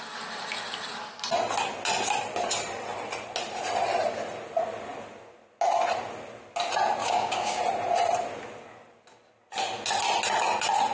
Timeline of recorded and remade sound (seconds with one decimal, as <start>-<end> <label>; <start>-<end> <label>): 0.0-7.0 recorded; 7.0-7.6 remade; 7.6-10.9 recorded